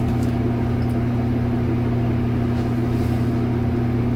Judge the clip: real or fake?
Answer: real